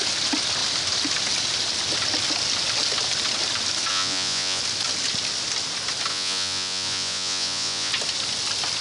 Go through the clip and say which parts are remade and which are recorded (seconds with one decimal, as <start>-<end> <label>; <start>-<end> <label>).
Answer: 0.0-3.9 recorded; 3.9-4.6 remade; 4.6-6.1 recorded; 6.1-7.9 remade; 7.9-8.8 recorded